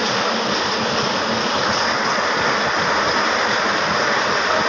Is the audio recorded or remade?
recorded